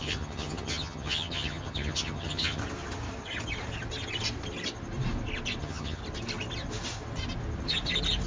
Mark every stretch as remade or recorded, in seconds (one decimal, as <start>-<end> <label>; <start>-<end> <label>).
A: 0.0-2.6 remade; 2.6-5.6 recorded; 5.6-6.0 remade; 6.0-8.3 recorded